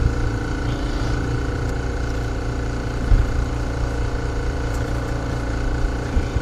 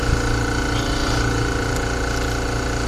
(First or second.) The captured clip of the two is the second